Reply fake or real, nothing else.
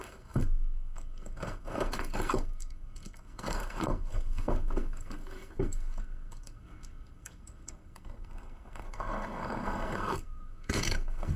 fake